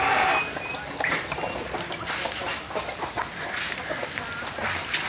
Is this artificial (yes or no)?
no